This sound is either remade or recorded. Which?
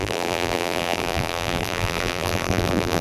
remade